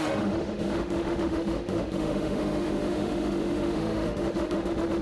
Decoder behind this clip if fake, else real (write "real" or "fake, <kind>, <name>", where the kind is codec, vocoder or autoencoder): fake, autoencoder, DAC-VAE